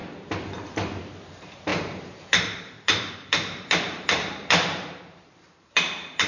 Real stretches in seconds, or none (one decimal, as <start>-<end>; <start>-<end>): 0.0-1.0